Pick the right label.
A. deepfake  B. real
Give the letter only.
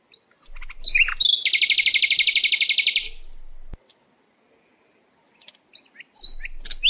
B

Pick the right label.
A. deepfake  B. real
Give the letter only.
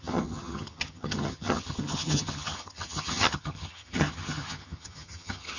A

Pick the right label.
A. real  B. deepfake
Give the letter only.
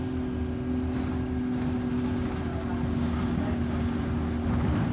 A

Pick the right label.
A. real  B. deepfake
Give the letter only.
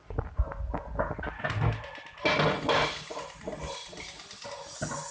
A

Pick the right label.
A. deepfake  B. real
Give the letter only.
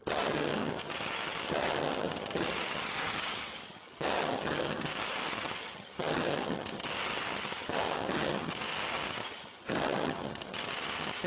A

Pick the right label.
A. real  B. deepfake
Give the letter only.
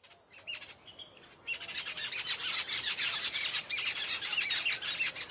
A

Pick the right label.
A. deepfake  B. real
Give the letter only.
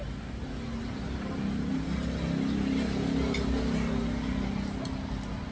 B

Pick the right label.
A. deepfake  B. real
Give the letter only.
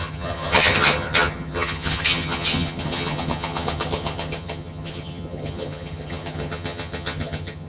A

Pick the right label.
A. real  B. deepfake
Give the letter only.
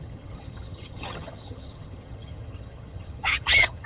B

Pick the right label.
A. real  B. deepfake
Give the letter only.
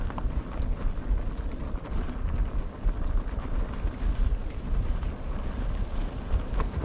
A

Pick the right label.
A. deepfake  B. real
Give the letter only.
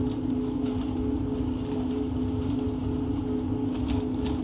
B